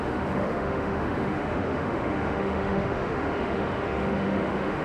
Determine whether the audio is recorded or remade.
remade